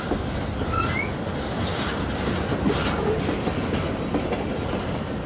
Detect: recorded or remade recorded